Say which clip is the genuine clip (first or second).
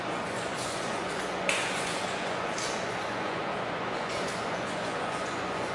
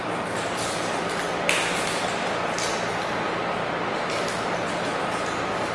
second